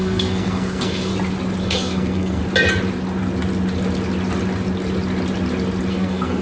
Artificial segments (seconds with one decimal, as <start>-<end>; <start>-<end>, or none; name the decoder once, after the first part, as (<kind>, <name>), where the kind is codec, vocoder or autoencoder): 0.0-1.1 (codec, SNAC); 1.6-2.4; 5.9-6.4